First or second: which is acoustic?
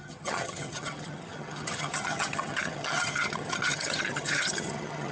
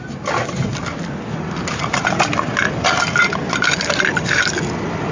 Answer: second